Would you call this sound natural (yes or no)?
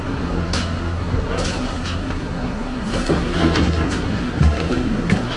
no